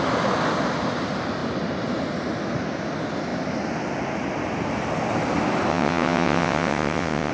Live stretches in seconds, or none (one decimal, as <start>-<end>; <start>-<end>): 0.0-5.7